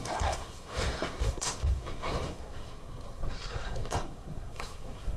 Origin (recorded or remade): remade